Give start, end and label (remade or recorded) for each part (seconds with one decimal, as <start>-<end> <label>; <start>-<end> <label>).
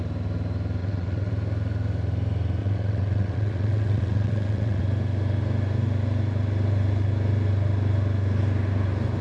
0.0-0.8 recorded; 0.8-1.3 remade; 1.3-2.6 recorded; 2.6-4.8 remade; 4.8-9.2 recorded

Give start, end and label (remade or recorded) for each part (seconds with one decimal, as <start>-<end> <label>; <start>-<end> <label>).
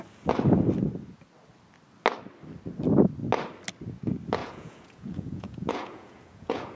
0.0-4.4 recorded; 4.4-6.8 remade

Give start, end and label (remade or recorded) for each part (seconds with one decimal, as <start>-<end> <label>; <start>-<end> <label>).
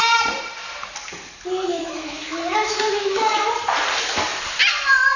0.0-1.7 recorded; 1.7-3.4 remade; 3.4-5.2 recorded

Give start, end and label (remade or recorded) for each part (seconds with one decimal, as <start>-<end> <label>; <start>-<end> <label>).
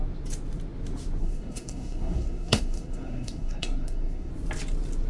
0.0-1.2 recorded; 1.2-4.3 remade; 4.3-5.1 recorded